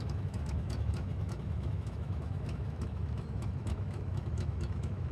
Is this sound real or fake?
fake